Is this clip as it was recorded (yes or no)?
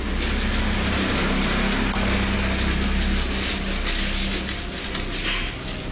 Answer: yes